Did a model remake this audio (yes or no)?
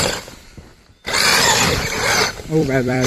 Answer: yes